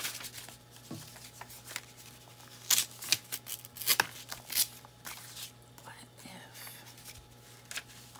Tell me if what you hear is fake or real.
real